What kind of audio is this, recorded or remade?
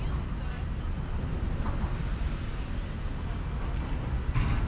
recorded